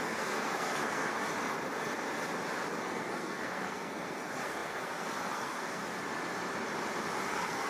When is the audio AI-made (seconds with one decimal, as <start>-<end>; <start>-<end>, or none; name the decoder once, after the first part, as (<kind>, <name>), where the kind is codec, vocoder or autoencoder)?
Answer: 0.0-1.2 (codec, SNAC); 2.7-5.8; 7.3-7.7